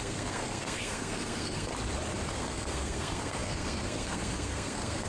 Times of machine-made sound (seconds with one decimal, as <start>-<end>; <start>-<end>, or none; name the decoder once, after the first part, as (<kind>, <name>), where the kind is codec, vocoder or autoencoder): 0.0-1.7 (codec, SNAC); 2.3-5.1